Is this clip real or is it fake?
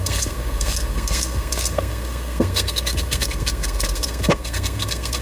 fake